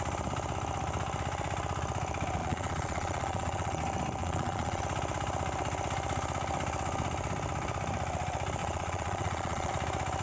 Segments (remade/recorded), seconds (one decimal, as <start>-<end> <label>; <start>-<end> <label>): 0.0-2.4 recorded; 2.4-3.8 remade; 3.8-4.2 recorded; 4.2-4.8 remade; 4.8-8.6 recorded; 8.6-9.7 remade; 9.7-10.2 recorded